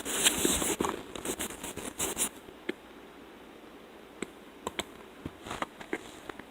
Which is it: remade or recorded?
recorded